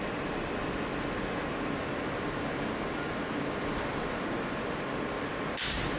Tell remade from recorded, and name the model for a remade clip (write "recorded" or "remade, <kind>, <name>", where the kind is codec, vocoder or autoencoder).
recorded